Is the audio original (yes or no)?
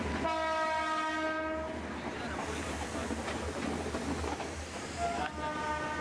yes